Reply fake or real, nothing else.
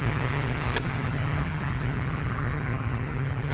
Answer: fake